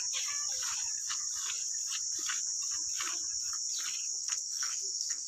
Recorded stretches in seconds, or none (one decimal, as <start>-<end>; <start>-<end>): 0.0-4.2